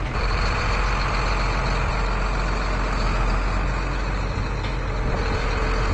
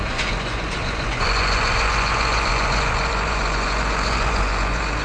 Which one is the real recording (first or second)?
first